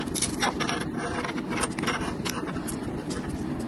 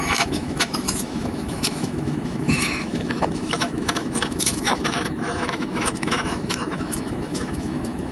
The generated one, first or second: second